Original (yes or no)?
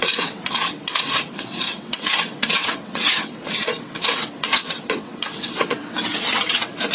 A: no